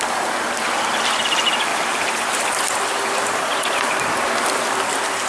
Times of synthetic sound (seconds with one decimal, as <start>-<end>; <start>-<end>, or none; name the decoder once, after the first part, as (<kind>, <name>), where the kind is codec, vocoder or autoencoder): 1.7-4.0 (vocoder, BigVGAN v2)